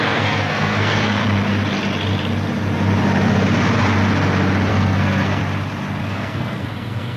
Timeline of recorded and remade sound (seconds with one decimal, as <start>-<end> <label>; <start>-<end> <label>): 0.0-1.2 remade; 1.2-4.7 recorded; 4.7-5.4 remade; 5.4-6.0 recorded; 6.0-7.2 remade